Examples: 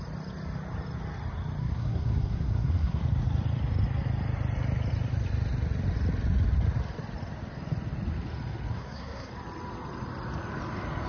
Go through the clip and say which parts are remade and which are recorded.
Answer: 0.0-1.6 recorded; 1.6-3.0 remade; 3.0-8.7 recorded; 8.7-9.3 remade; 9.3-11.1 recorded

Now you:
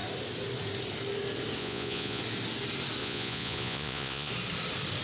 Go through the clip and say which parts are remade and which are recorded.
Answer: 0.0-1.6 recorded; 1.6-2.2 remade; 2.2-3.0 recorded; 3.0-4.3 remade; 4.3-5.0 recorded

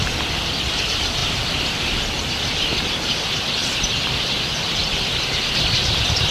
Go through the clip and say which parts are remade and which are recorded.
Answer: 0.0-6.3 recorded

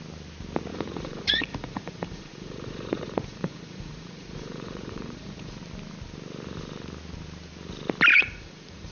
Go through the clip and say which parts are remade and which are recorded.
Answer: 0.0-0.7 recorded; 0.7-5.6 remade; 5.6-8.1 recorded; 8.1-8.9 remade

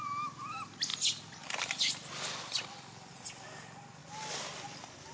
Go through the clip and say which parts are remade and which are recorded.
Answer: 0.0-5.1 recorded